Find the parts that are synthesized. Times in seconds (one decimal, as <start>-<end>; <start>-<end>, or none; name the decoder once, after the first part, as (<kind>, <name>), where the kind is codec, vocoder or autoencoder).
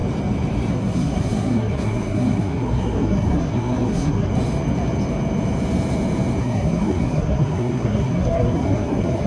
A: 0.7-4.3 (codec, SNAC); 6.4-9.3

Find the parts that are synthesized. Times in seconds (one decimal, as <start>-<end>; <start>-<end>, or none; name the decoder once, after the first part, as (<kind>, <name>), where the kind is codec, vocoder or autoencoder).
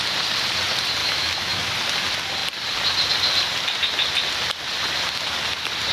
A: 1.0-1.7 (autoencoder, DAC-VAE)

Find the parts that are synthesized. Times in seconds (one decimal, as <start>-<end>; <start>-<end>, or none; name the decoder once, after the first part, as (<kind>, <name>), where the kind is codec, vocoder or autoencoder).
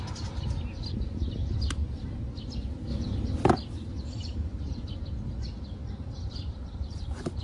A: 5.8-7.4 (vocoder, BigVGAN v2)